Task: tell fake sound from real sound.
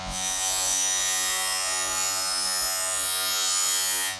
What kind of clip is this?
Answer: fake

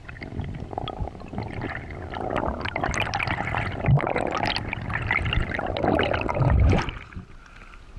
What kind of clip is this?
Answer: real